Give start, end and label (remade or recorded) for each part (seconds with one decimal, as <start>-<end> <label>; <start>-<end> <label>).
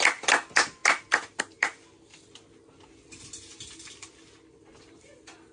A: 0.0-5.5 recorded